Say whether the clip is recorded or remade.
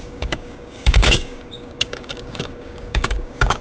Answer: remade